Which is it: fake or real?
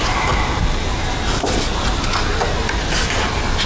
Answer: real